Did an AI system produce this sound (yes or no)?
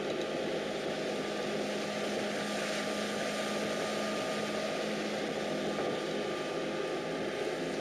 no